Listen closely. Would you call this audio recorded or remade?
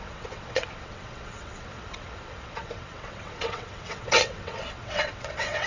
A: remade